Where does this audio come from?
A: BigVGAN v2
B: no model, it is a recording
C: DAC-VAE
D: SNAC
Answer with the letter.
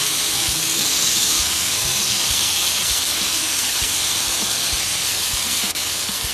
D